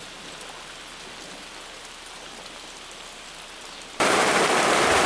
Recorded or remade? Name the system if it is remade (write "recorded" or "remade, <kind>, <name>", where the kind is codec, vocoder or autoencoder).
recorded